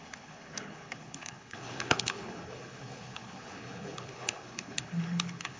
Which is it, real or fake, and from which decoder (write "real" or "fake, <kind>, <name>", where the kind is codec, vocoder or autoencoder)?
fake, codec, HILCodec